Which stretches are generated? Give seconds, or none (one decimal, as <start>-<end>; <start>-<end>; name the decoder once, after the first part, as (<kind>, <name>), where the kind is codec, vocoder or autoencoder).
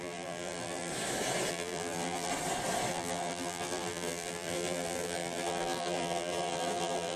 0.0-0.9 (vocoder, BigVGAN v2); 1.5-2.3; 2.9-7.2